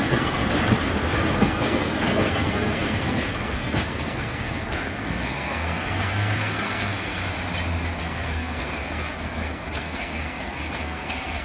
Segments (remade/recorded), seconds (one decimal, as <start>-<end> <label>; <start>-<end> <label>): 0.0-0.4 remade; 0.4-1.3 recorded; 1.3-7.2 remade; 7.2-8.0 recorded; 8.0-11.4 remade